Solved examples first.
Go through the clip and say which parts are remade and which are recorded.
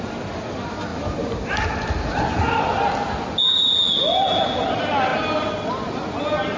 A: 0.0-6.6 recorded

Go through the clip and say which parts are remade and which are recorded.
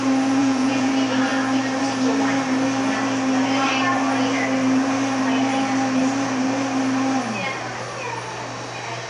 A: 0.0-0.4 recorded; 0.4-0.9 remade; 0.9-9.1 recorded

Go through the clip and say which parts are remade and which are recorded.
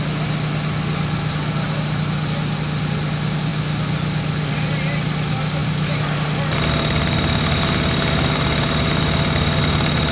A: 0.0-10.1 recorded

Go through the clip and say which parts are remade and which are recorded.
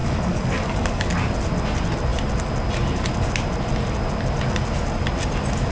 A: 0.0-1.1 remade; 1.1-5.7 recorded